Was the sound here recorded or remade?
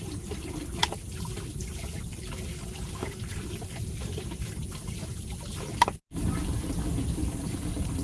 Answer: recorded